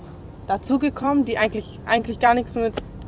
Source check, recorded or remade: remade